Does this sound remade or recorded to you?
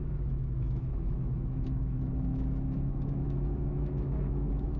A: remade